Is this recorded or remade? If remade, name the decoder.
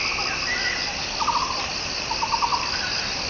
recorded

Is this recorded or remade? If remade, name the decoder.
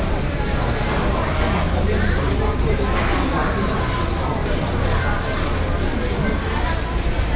recorded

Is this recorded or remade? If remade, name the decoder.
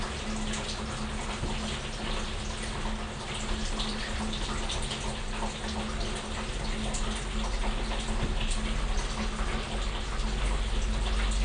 recorded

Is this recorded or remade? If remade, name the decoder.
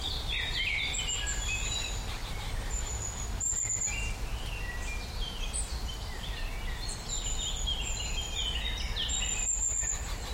recorded